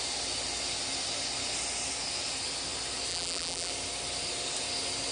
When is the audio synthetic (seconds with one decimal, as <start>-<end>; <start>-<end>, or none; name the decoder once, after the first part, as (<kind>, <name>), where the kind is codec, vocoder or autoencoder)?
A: 3.1-3.7 (vocoder, BigVGAN v2)